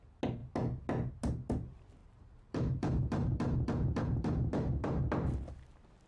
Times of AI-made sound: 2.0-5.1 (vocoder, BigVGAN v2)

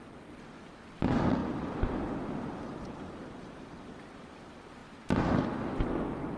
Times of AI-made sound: 1.4-4.2 (vocoder, BigVGAN v2)

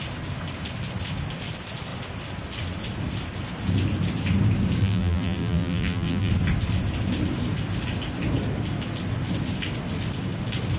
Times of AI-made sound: 4.8-6.3 (vocoder, BigVGAN v2)

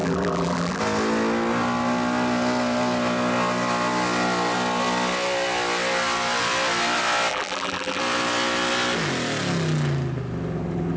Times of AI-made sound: 0.0-0.8 (vocoder, BigVGAN v2); 7.3-8.0

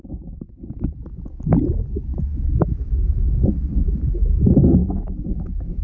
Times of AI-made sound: 4.8-5.8 (vocoder, BigVGAN v2)

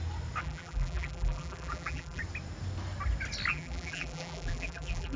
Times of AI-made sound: 0.4-2.2 (vocoder, BigVGAN v2); 3.5-5.2

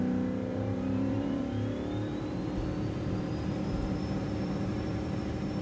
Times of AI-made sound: 0.5-1.4 (vocoder, BigVGAN v2); 2.1-5.6